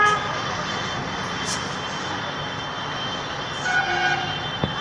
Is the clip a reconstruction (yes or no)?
no